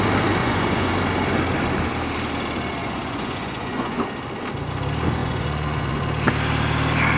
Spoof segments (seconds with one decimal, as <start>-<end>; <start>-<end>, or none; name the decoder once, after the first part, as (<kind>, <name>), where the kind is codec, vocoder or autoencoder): 0.4-0.9 (vocoder, Vocos); 2.8-4.0; 5.2-6.0